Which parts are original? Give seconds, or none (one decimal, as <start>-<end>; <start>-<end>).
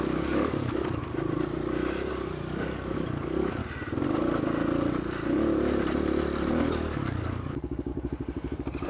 1.0-2.1; 3.6-6.6; 7.9-8.9